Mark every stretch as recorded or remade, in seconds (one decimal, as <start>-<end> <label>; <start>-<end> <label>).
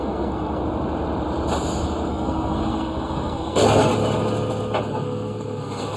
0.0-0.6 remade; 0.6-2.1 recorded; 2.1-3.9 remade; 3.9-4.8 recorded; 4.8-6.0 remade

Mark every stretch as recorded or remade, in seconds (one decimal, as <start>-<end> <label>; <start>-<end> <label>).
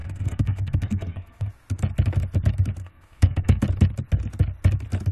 0.0-1.5 remade; 1.5-2.8 recorded; 2.8-3.6 remade; 3.6-5.1 recorded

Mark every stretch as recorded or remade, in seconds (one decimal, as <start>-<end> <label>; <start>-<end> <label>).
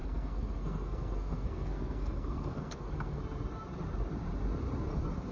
0.0-3.2 remade; 3.2-5.3 recorded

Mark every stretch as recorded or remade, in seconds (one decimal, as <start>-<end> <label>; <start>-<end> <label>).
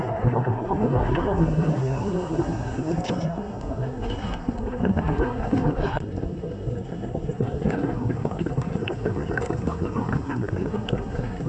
0.0-11.5 remade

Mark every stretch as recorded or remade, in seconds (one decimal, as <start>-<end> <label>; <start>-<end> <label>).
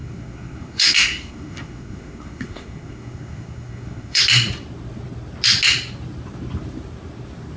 0.0-4.2 remade; 4.2-7.6 recorded